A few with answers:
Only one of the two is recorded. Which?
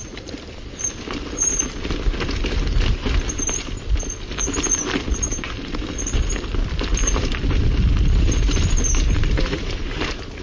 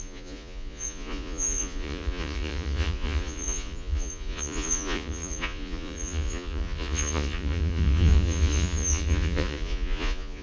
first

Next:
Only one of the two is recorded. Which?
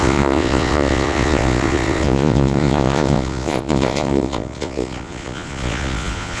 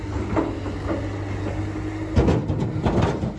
second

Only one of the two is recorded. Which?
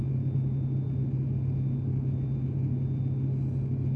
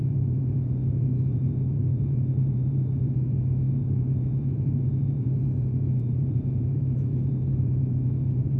first